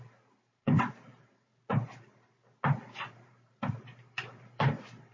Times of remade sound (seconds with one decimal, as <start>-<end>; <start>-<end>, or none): 0.0-1.5; 3.1-5.1